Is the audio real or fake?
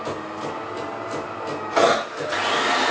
real